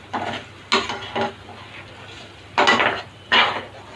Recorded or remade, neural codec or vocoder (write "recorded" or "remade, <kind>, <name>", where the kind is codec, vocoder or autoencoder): recorded